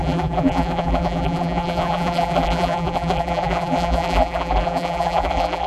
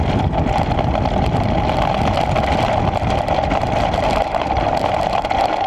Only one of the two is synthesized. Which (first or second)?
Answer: first